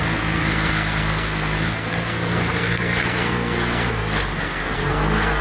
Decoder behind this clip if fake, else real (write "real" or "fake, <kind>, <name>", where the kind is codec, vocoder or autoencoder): fake, codec, SNAC